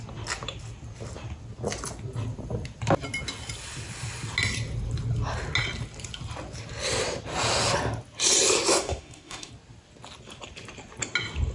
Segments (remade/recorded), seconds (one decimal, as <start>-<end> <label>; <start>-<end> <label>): 0.0-8.7 recorded; 8.7-9.5 remade; 9.5-11.5 recorded